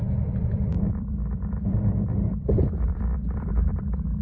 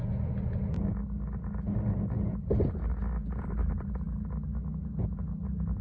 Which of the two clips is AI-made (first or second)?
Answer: first